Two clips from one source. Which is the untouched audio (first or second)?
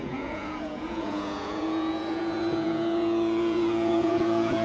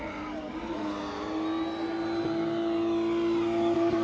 second